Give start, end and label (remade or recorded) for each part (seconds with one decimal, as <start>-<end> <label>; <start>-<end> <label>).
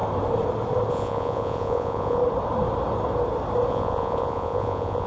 0.0-0.9 recorded; 0.9-2.2 remade; 2.2-3.7 recorded; 3.7-5.1 remade